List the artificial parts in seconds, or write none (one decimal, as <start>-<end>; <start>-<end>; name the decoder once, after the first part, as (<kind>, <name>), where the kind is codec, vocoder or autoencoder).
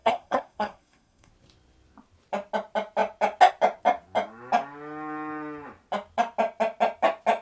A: 0.0-1.3 (codec, SNAC)